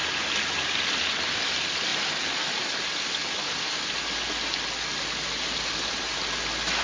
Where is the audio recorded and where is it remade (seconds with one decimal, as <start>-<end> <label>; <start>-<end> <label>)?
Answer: 0.0-6.8 recorded